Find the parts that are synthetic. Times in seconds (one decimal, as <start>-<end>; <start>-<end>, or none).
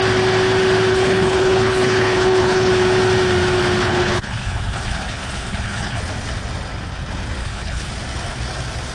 0.9-2.7; 3.8-6.0; 7.4-7.9